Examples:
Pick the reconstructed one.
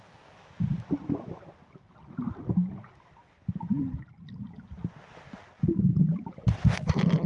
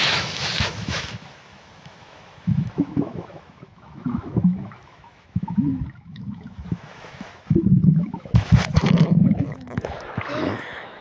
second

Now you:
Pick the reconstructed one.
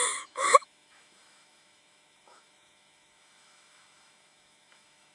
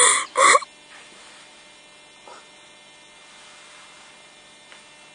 first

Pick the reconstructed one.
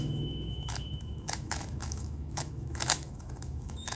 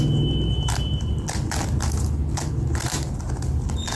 first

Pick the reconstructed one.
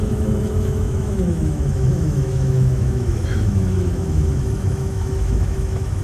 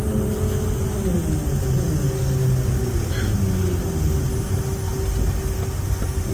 first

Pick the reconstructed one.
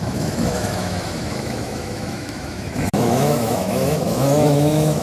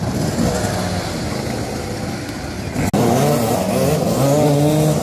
first